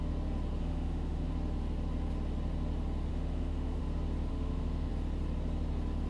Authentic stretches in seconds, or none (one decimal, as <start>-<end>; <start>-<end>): 0.0-0.6; 1.3-3.1; 3.8-4.3; 4.9-6.1